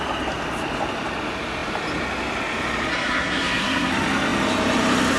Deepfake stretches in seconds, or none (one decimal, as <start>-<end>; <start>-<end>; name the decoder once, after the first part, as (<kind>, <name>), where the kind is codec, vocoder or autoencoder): 2.9-3.9 (codec, SNAC)